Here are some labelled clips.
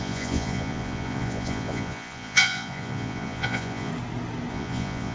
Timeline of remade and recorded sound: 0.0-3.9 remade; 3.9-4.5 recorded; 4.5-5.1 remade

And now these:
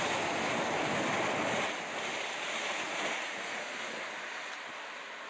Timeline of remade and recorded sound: 0.0-5.3 recorded

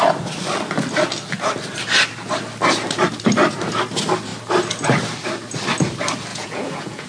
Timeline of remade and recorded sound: 0.0-6.3 recorded; 6.3-7.1 remade

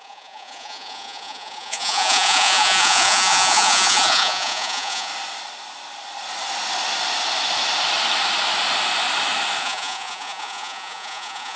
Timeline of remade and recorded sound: 0.0-5.1 remade; 5.1-9.6 recorded; 9.6-11.6 remade

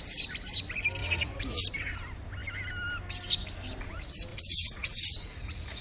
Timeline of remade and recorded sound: 0.0-1.0 recorded; 1.0-1.6 remade; 1.6-4.3 recorded; 4.3-5.8 remade